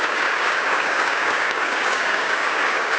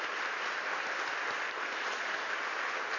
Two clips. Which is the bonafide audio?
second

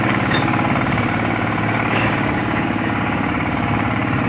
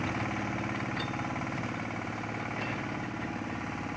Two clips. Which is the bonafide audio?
second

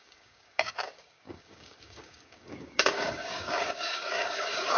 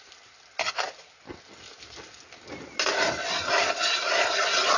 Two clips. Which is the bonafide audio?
second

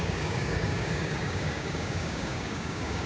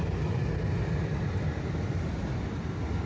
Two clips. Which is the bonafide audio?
second